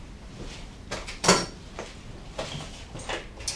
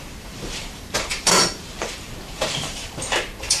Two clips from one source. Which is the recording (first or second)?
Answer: first